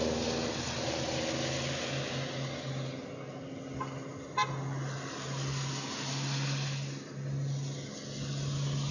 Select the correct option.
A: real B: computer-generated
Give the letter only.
A